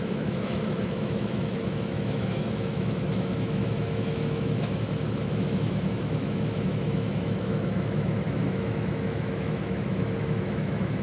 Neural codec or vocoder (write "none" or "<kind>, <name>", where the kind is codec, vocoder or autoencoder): autoencoder, DAC-VAE